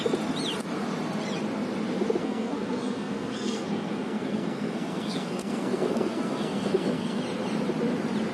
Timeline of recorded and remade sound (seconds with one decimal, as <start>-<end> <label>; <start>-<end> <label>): 0.0-2.2 recorded; 2.2-7.2 remade; 7.2-8.3 recorded

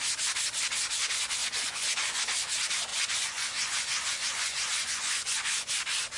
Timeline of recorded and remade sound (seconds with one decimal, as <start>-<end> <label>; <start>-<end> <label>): 0.0-1.4 recorded; 1.4-2.2 remade; 2.2-2.9 recorded; 2.9-5.7 remade; 5.7-6.2 recorded

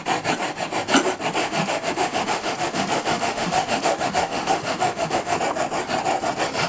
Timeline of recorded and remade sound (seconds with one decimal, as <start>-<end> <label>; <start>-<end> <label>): 0.0-1.4 recorded; 1.4-5.4 remade; 5.4-6.7 recorded

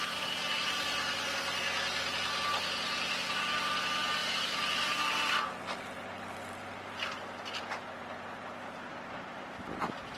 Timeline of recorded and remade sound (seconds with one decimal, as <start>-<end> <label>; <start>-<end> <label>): 0.0-8.9 recorded; 8.9-9.4 remade; 9.4-10.2 recorded

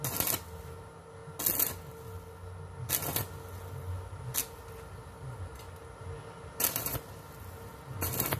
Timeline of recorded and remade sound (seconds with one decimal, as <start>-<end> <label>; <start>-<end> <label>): 0.0-8.4 recorded

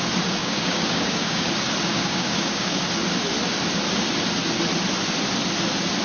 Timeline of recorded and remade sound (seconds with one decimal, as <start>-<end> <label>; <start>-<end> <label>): 0.0-0.4 recorded; 0.4-1.5 remade; 1.5-1.9 recorded; 1.9-2.8 remade; 2.8-6.0 recorded

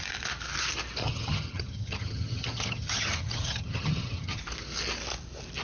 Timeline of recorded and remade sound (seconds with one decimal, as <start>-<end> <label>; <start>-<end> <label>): 0.0-1.0 recorded; 1.0-4.4 remade; 4.4-5.6 recorded